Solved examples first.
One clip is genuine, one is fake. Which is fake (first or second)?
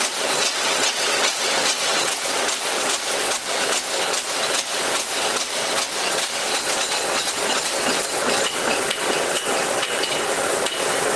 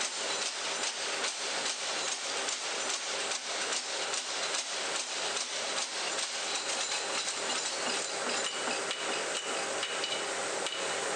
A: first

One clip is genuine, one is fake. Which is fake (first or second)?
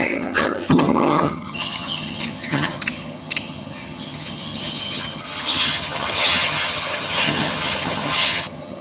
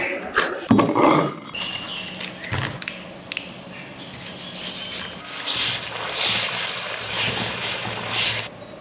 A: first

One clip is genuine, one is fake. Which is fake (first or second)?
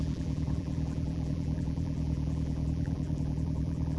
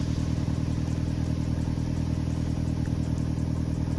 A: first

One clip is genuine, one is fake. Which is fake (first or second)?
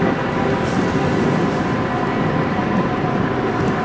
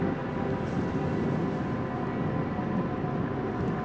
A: first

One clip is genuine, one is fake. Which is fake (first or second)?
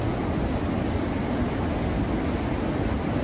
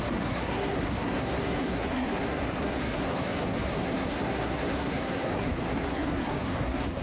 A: second